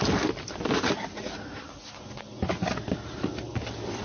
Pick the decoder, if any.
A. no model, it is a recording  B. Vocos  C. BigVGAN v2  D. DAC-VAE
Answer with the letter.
A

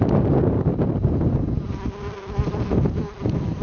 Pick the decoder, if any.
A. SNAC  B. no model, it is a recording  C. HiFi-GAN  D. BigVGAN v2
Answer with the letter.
B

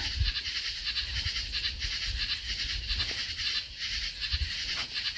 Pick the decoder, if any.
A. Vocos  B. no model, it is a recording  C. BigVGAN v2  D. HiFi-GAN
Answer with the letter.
B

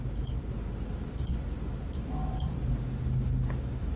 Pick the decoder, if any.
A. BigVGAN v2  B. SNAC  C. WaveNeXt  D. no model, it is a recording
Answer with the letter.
D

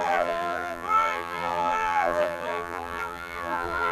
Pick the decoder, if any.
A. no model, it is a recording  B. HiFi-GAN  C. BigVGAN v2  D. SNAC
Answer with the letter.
C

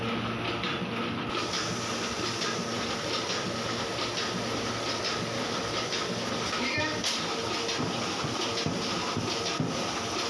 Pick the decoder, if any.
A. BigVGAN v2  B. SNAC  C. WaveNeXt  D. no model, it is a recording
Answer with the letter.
D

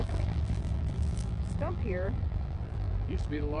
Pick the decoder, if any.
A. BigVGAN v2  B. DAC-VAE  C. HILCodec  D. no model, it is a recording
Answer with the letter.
A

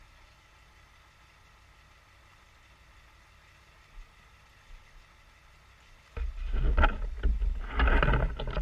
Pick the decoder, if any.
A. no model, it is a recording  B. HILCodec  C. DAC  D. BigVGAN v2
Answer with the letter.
A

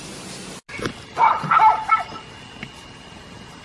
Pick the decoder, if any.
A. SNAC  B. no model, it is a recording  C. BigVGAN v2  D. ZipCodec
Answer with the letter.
B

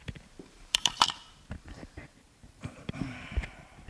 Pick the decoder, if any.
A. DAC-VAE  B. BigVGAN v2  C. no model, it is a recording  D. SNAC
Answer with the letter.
B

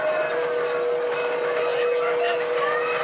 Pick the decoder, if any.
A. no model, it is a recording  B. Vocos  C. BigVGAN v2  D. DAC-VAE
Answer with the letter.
A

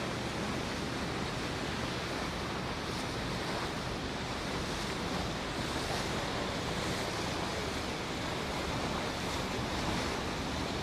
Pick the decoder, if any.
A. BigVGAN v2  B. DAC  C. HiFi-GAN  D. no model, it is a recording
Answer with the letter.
D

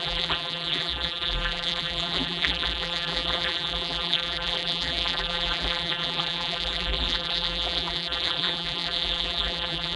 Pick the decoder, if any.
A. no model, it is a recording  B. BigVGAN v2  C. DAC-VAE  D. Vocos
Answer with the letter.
B